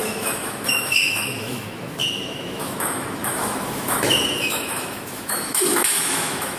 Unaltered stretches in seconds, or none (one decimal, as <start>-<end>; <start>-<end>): none